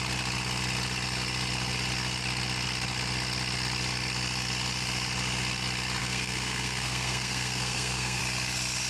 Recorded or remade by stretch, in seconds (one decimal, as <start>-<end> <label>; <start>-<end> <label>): 0.0-6.0 recorded; 6.0-8.2 remade; 8.2-8.9 recorded